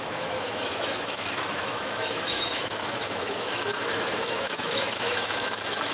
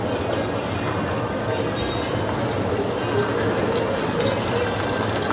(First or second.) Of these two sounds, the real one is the second